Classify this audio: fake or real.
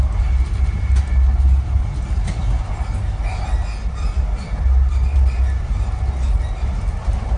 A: real